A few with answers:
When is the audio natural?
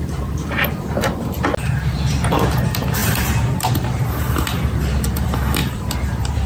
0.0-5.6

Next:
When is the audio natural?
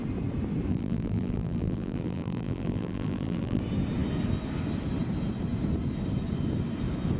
0.0-0.7; 3.6-7.2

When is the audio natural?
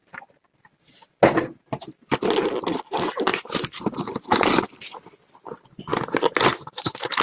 0.0-3.3; 4.3-5.9